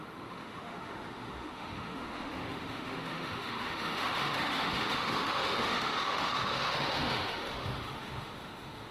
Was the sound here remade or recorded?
remade